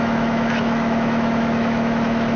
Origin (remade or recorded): remade